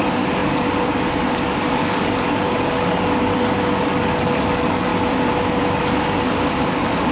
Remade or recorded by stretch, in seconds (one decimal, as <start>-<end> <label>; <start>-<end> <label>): 0.0-4.9 remade; 4.9-5.8 recorded; 5.8-7.1 remade